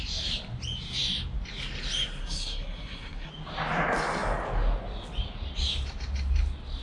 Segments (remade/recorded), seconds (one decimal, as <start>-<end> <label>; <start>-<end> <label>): 0.0-2.2 recorded; 2.2-3.3 remade; 3.3-6.8 recorded